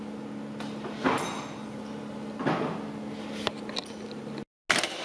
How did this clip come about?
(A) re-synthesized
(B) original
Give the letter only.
B